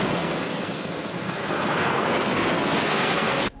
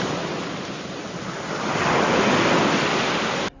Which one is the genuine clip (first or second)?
second